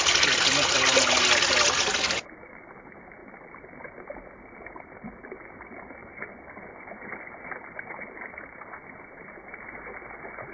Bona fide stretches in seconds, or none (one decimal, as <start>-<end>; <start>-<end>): 0.0-10.5